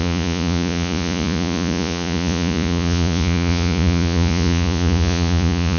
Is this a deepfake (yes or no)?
yes